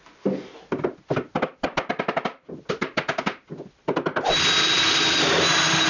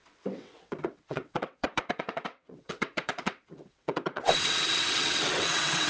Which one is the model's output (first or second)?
second